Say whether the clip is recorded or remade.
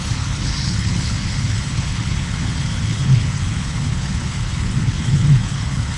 remade